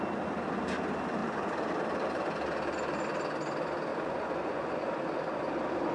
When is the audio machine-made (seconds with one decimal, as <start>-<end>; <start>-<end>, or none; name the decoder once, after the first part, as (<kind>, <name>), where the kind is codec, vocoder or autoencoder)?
3.9-4.9 (vocoder, Vocos)